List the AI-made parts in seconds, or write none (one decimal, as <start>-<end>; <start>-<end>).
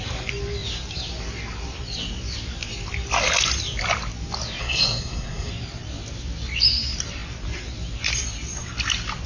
4.6-5.5